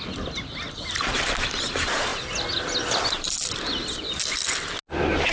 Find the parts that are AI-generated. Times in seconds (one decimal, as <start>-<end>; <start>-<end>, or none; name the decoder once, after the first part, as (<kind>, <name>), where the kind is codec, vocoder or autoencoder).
none